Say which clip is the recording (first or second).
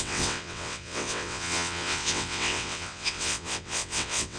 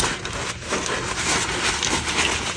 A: second